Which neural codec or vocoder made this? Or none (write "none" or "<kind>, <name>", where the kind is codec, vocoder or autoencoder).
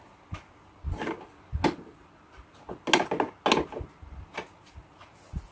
none